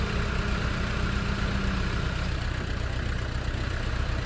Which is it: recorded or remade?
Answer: recorded